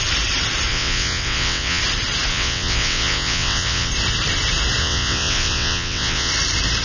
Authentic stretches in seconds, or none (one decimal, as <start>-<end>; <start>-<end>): 0.0-0.7; 1.8-2.3; 3.9-4.8; 6.3-6.8